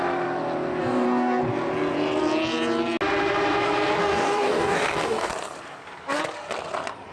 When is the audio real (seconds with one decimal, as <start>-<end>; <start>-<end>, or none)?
0.0-0.8; 1.4-4.0; 5.3-7.1